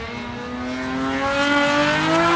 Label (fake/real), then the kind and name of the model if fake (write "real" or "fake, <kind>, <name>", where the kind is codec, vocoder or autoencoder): real